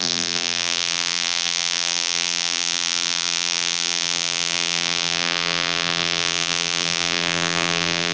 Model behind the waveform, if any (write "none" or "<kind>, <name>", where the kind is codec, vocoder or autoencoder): vocoder, BigVGAN v2